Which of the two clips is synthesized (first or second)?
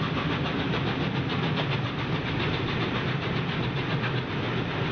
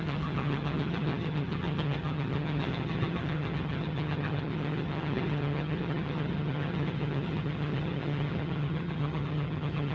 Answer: second